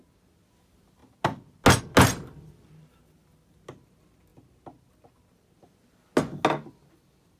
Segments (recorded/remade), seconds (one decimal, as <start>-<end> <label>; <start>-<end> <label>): 0.0-7.4 recorded